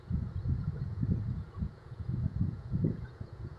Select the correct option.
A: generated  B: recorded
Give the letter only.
A